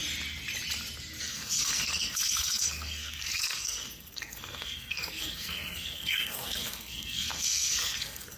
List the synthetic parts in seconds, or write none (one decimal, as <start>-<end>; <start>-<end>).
1.2-8.4